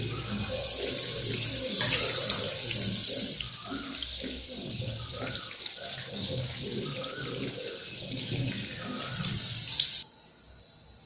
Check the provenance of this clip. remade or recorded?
recorded